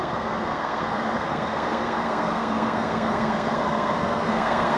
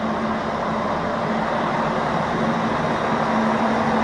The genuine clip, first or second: second